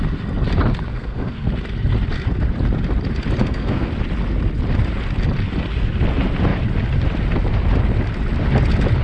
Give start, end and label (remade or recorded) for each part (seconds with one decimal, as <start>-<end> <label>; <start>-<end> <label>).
0.0-0.9 recorded; 0.9-1.5 remade; 1.5-3.4 recorded; 3.4-3.9 remade; 3.9-9.0 recorded